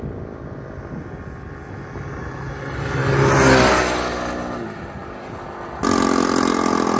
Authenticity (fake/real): real